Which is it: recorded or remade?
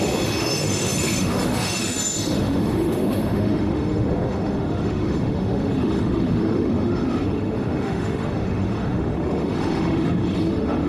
remade